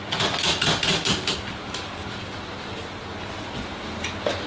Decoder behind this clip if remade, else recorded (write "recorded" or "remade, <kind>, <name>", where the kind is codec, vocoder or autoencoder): recorded